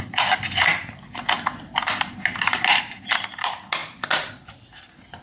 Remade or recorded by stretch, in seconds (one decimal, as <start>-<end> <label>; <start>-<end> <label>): 0.0-5.2 recorded